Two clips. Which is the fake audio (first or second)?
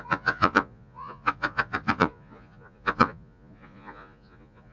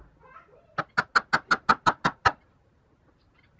first